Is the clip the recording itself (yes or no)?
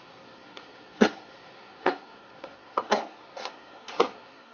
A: no